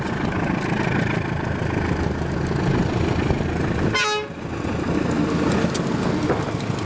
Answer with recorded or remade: recorded